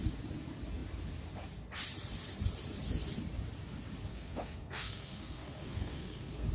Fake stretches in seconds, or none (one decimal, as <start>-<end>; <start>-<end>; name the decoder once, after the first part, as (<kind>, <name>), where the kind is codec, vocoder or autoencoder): 4.1-6.5 (codec, SNAC)